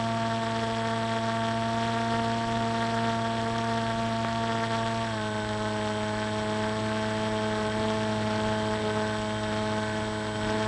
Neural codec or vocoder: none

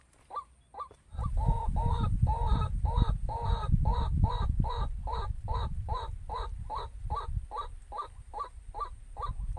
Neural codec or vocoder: none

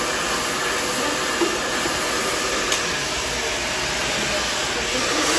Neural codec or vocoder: none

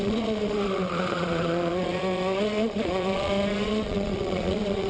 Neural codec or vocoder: vocoder, Vocos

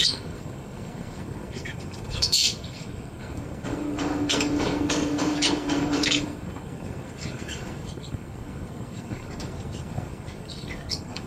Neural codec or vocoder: codec, SNAC